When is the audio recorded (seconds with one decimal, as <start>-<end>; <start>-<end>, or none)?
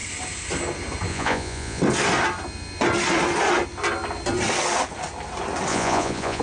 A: 0.0-1.1; 1.8-5.7